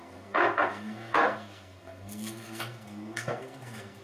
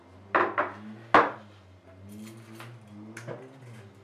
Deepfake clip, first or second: first